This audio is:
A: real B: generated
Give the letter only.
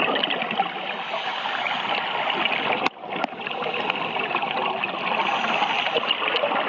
A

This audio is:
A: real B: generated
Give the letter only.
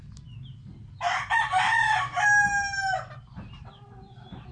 A